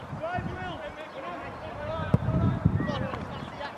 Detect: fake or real real